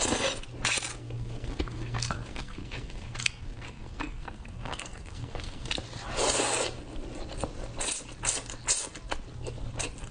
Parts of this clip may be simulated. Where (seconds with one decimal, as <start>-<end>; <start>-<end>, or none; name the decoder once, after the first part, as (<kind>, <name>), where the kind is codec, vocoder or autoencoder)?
0.9-5.7 (codec, SNAC)